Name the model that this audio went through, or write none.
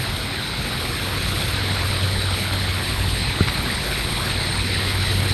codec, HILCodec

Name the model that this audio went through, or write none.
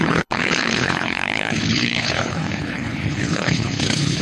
codec, HILCodec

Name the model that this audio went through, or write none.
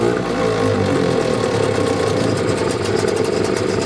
none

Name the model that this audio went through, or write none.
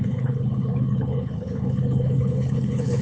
codec, HILCodec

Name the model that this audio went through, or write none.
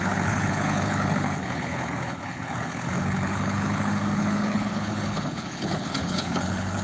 codec, HILCodec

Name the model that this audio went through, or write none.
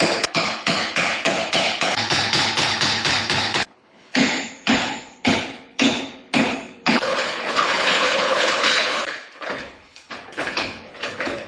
codec, HILCodec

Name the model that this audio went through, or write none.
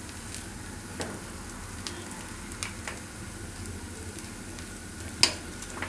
none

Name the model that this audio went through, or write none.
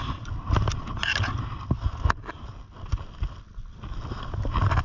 none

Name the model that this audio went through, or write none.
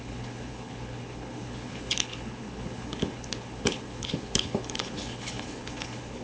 codec, HILCodec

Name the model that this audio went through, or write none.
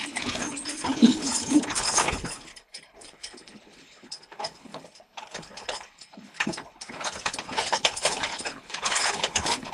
codec, HILCodec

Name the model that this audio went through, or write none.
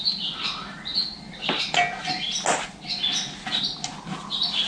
none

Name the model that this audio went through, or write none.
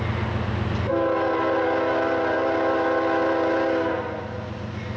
none